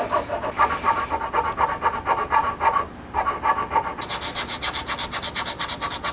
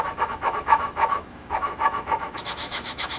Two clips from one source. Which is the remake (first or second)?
second